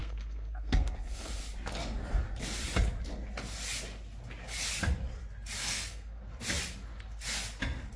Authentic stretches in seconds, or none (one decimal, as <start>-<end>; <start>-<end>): 1.3-5.6; 6.2-8.0